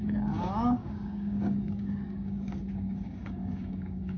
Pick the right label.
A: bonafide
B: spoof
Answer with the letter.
B